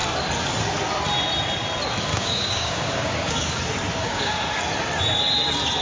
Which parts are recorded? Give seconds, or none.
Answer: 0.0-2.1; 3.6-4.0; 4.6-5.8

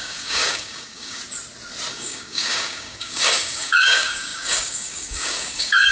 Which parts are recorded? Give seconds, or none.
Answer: 1.2-1.9

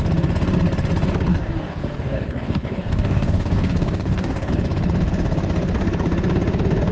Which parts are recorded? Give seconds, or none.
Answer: 0.0-1.3; 4.5-6.9

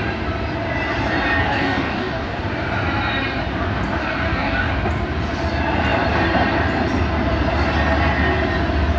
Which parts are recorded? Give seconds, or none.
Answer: 0.0-1.4; 2.4-4.0; 4.7-9.0